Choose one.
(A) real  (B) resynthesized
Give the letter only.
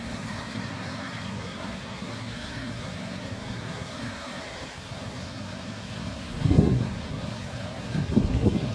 B